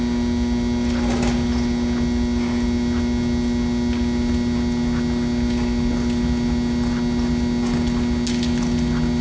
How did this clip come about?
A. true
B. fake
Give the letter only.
A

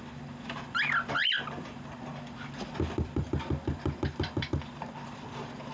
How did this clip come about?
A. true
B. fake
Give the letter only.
B